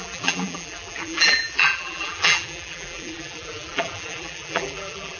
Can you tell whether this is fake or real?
fake